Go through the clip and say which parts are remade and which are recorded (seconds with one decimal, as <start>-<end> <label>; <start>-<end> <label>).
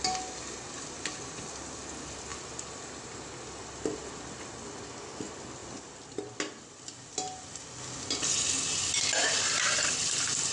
0.0-10.5 recorded